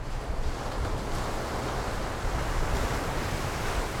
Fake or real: real